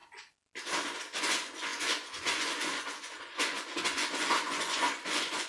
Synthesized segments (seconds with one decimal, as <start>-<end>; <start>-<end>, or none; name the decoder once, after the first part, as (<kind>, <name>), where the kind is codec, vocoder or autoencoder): 1.2-5.5 (vocoder, Vocos)